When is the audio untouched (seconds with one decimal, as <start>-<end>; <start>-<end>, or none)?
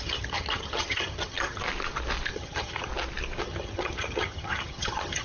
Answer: 1.6-2.3; 2.9-3.4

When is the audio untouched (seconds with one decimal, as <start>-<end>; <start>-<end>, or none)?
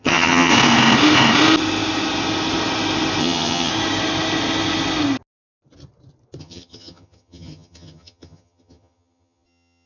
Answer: 0.5-3.2; 3.7-6.4